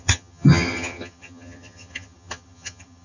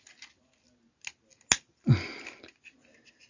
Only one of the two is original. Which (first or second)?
second